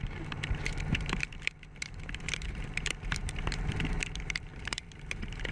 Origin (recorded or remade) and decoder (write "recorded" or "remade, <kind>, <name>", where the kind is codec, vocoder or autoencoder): remade, vocoder, BigVGAN v2